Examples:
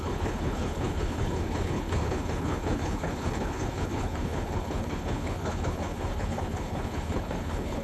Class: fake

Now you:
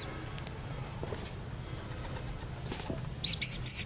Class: real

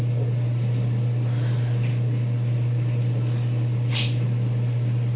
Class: real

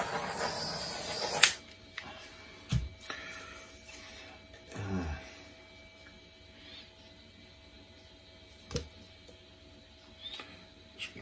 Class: real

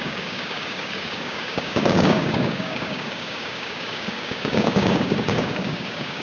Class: fake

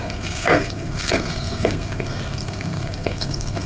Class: fake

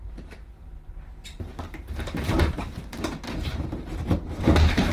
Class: fake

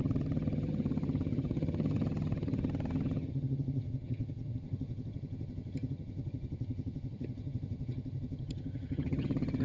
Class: fake